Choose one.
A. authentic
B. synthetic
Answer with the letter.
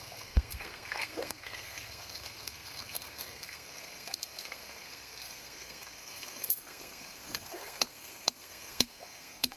B